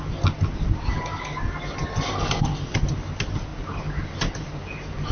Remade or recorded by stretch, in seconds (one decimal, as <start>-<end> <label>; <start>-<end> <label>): 0.0-5.1 recorded